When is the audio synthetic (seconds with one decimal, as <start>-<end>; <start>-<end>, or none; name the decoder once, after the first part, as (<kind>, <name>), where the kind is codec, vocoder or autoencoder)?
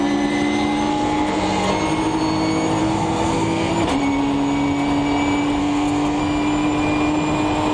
0.9-1.7 (codec, SNAC); 2.8-3.7; 5.6-6.2